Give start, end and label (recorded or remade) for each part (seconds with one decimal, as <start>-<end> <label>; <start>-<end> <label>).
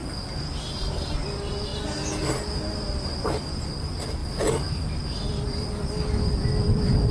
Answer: 0.0-7.1 recorded